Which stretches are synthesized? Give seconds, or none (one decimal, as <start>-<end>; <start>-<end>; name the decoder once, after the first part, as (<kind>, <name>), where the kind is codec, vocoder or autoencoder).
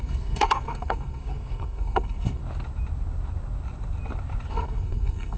0.0-2.4 (codec, SNAC); 4.5-5.4